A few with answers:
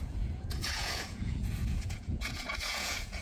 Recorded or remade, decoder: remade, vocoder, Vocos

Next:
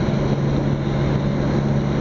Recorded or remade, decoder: recorded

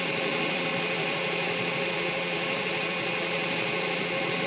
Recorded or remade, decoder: remade, vocoder, Vocos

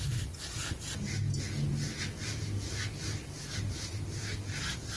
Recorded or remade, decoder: recorded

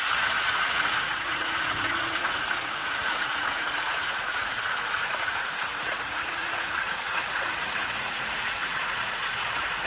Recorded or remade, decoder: remade, vocoder, Vocos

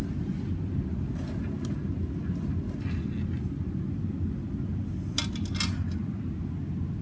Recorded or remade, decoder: recorded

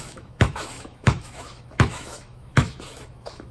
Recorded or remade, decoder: remade, autoencoder, DAC-VAE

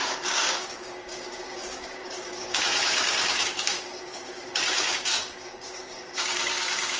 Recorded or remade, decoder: remade, codec, DAC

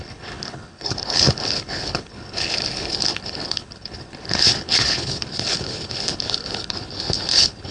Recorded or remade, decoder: remade, codec, HILCodec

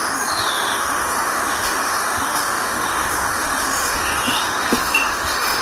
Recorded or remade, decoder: remade, autoencoder, DAC-VAE